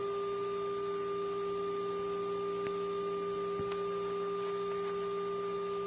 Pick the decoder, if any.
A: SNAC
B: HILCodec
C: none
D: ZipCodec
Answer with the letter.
C